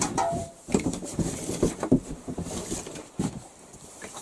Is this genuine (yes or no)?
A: no